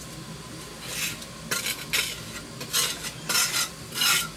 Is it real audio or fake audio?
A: real